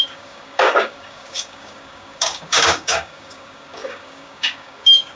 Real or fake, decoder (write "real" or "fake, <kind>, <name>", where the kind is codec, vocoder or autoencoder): fake, codec, DAC